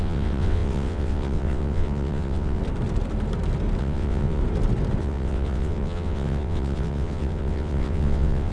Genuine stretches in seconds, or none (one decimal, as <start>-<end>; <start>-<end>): 2.6-3.8; 4.4-5.0